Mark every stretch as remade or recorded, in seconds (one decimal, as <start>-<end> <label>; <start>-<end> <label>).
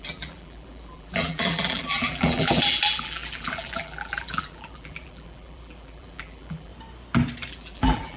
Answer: 0.0-6.7 remade; 6.7-7.5 recorded; 7.5-8.2 remade